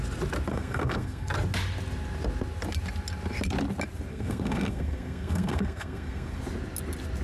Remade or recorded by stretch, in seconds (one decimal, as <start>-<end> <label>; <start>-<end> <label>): 0.0-0.5 recorded; 0.5-1.3 remade; 1.3-4.1 recorded; 4.1-6.4 remade; 6.4-7.2 recorded